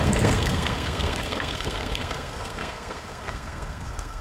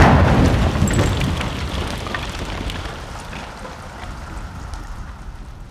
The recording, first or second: second